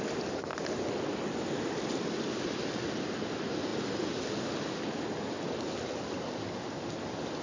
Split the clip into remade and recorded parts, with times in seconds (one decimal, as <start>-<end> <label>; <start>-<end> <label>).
0.0-7.4 recorded